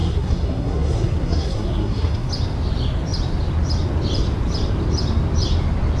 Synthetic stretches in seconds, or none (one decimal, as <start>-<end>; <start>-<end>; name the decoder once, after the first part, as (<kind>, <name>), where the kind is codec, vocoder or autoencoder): 0.0-2.3 (codec, SNAC)